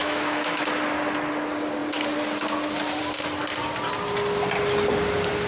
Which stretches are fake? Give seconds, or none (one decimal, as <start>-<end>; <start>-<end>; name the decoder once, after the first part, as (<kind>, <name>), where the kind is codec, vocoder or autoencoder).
0.0-0.7 (autoencoder, DAC-VAE)